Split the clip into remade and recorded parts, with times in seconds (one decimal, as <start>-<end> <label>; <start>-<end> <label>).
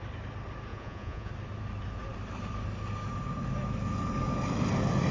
0.0-0.7 recorded; 0.7-1.3 remade; 1.3-5.1 recorded